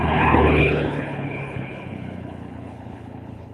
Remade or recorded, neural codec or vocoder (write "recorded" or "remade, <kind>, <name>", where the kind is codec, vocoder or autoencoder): remade, codec, HILCodec